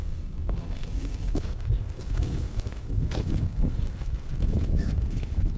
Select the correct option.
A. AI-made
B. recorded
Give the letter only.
A